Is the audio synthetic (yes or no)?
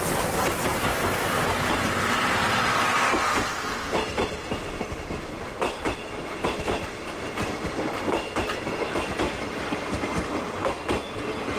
no